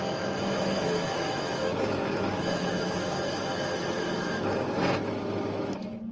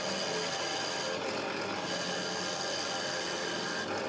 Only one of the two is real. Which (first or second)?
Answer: second